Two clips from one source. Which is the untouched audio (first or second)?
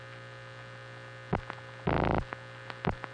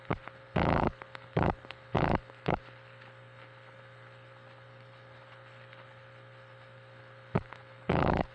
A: first